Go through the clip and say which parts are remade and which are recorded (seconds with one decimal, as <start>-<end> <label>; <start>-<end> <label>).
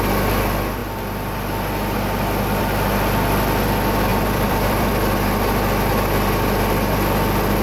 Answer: 0.0-4.1 recorded; 4.1-4.9 remade; 4.9-7.6 recorded